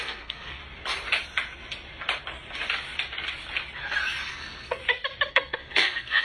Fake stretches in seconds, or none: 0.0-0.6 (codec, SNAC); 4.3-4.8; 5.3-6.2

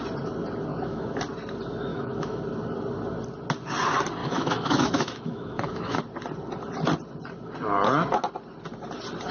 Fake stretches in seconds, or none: 0.7-1.2 (autoencoder, DAC-VAE); 1.9-2.4; 4.2-6.0

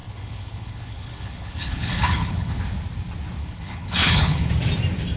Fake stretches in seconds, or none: 0.0-2.6 (codec, HILCodec); 3.4-4.5

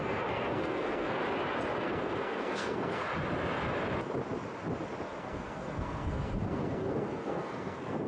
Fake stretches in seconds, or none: 0.0-1.2 (codec, SNAC); 1.8-3.0; 5.2-8.1

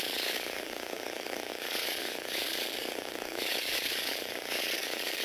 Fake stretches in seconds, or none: 0.0-5.2 (codec, DAC)

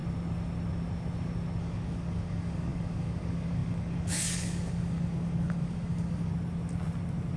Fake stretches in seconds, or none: 1.6-6.3 (codec, DAC)

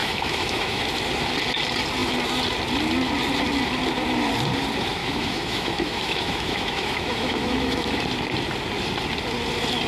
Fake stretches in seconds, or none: 0.0-0.8 (autoencoder, DAC-VAE); 5.0-8.0